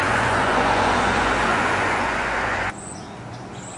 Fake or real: fake